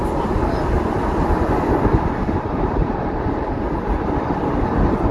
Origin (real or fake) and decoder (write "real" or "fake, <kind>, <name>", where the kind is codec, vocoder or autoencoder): real